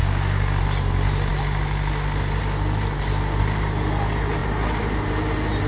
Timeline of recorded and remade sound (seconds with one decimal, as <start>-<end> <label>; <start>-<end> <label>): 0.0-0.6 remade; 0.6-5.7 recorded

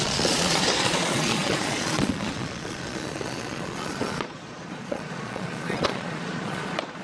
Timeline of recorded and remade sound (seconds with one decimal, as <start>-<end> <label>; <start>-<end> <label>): 0.0-7.0 remade

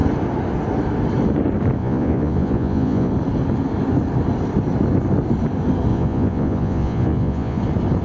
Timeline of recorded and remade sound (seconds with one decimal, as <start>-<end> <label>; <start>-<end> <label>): 0.0-1.8 recorded; 1.8-3.1 remade; 3.1-5.9 recorded; 5.9-7.6 remade; 7.6-8.0 recorded

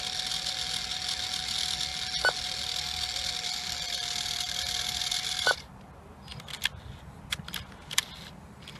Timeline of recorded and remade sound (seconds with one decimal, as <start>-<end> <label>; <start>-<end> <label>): 0.0-8.8 recorded

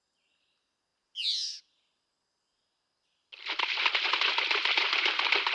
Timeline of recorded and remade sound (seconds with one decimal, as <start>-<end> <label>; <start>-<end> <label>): 0.0-0.9 recorded; 0.9-4.2 remade; 4.2-5.5 recorded